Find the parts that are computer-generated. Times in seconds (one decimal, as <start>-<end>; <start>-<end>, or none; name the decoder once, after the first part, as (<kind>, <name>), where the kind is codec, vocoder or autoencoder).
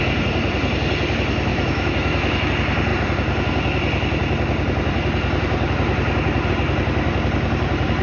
1.5-2.5 (autoencoder, DAC-VAE)